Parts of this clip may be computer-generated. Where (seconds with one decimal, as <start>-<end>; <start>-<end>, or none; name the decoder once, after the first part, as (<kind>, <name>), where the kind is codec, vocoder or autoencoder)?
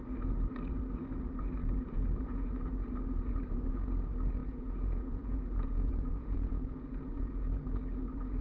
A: 1.6-2.5 (vocoder, Vocos); 4.4-7.4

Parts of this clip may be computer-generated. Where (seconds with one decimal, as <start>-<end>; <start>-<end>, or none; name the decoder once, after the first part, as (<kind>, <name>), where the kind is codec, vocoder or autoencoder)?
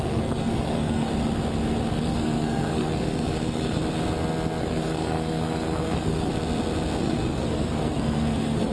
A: 0.0-1.1 (codec, SNAC); 1.9-3.8; 4.6-6.3; 7.0-8.7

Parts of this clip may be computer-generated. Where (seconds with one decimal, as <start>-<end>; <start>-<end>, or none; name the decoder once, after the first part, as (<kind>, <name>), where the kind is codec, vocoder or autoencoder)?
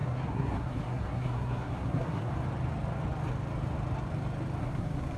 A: 0.0-2.3 (codec, SNAC); 4.6-5.2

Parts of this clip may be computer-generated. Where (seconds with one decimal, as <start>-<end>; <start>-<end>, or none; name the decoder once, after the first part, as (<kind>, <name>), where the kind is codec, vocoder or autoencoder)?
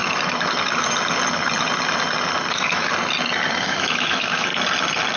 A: 2.5-2.9 (autoencoder, DAC-VAE); 3.6-4.5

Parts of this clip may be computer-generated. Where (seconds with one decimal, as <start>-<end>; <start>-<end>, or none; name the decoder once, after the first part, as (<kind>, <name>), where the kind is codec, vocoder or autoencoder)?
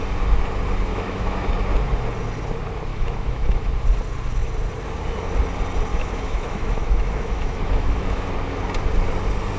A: 0.9-1.5 (autoencoder, DAC-VAE); 2.9-3.7; 5.9-8.3